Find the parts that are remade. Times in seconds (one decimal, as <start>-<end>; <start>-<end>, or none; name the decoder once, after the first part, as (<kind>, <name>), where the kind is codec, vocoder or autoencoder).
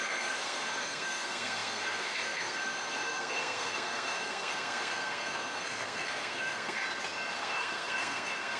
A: 0.0-6.8 (codec, SNAC); 7.4-8.6